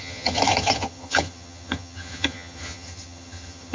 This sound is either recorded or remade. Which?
remade